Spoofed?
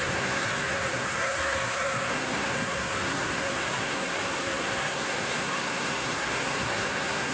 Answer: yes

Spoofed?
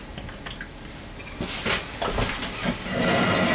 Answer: no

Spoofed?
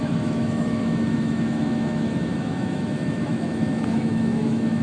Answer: yes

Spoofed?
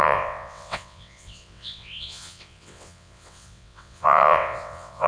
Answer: yes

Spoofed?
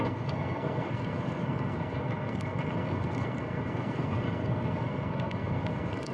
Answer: yes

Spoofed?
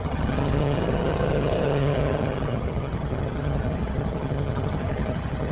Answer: yes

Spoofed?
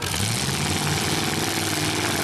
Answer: no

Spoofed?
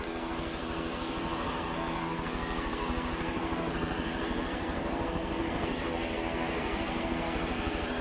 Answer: yes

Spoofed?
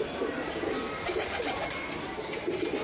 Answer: no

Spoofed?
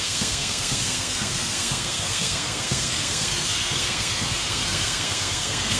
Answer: yes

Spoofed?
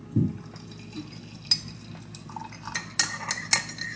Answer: no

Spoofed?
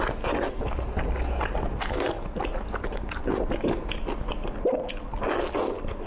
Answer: no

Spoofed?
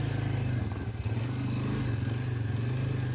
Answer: no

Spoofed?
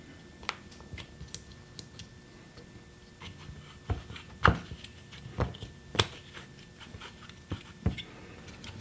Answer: no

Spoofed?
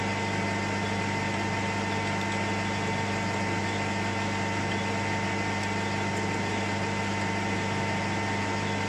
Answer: no